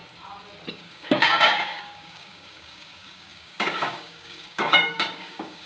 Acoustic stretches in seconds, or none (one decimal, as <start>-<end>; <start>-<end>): 0.0-0.7